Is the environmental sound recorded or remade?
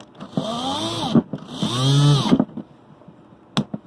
recorded